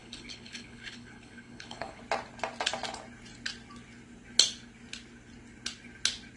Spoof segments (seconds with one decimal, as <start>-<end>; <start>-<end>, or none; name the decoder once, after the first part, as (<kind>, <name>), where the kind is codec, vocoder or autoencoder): 0.0-2.0 (codec, HILCodec)